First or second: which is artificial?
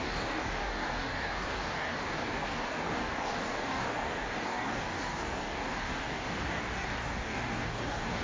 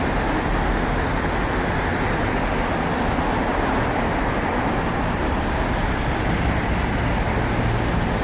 first